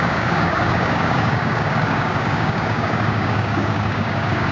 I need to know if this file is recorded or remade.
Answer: remade